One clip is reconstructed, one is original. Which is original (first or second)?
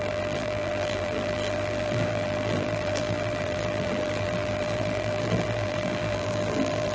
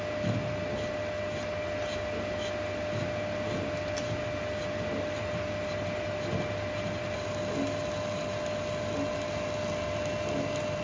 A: second